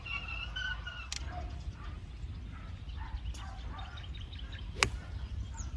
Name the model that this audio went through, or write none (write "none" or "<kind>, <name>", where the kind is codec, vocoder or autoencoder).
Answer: none